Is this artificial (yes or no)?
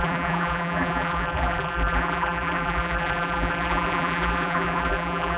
yes